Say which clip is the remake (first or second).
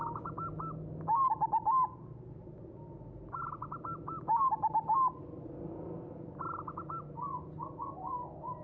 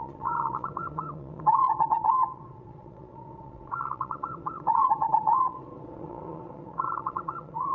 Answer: second